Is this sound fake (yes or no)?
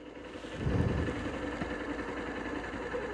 no